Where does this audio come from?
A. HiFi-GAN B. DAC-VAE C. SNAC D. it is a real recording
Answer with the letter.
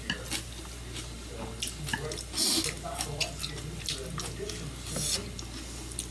D